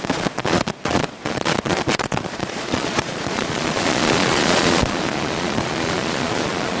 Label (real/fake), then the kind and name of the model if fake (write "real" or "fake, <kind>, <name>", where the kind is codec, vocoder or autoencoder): fake, vocoder, Vocos